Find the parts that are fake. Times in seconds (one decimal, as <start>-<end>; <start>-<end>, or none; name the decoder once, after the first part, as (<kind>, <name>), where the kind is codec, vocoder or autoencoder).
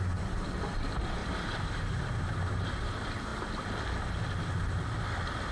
1.2-2.7 (vocoder, BigVGAN v2)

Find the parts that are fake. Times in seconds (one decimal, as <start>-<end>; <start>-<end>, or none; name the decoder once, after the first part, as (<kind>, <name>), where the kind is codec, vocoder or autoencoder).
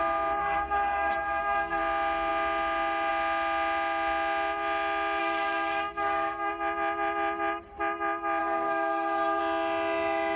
0.4-1.8 (codec, SNAC); 5.2-6.5; 8.4-9.4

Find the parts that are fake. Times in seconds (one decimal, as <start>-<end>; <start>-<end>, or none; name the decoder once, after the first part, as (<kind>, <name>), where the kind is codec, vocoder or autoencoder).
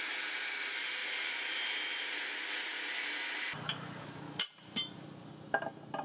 1.0-2.1 (vocoder, BigVGAN v2); 3.7-5.3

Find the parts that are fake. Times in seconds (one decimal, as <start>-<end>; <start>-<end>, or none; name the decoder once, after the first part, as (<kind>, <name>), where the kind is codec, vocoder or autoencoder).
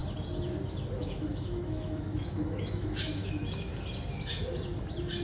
1.0-3.7 (autoencoder, DAC-VAE)